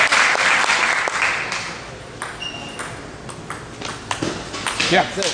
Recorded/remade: recorded